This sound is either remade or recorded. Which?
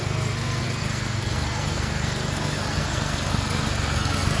remade